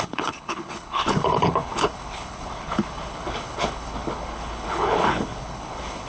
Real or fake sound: fake